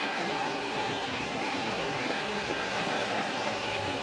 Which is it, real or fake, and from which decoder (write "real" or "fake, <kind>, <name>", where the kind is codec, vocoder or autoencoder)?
fake, codec, SNAC